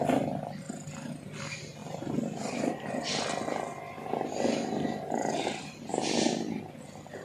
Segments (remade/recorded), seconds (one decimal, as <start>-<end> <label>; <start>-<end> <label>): 0.0-7.2 recorded